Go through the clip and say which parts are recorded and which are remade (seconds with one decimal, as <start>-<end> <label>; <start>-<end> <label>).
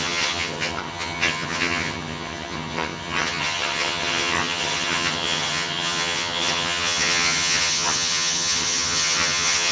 0.0-9.7 remade